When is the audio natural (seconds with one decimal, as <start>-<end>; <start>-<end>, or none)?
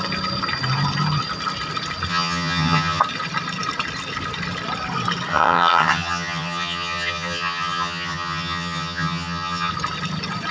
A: 0.0-2.1; 3.0-5.3; 9.7-10.5